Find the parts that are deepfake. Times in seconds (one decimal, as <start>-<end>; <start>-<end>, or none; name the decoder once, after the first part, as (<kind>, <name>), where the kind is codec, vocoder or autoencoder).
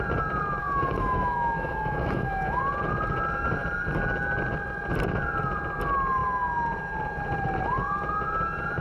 0.6-2.6 (autoencoder, DAC-VAE)